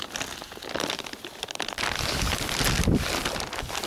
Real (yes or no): yes